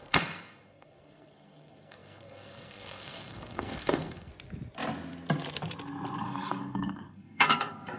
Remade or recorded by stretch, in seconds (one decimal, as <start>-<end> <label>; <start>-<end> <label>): 0.0-4.3 remade; 4.3-6.2 recorded; 6.2-8.0 remade